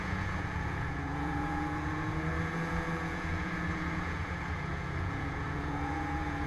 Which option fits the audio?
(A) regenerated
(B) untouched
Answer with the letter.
A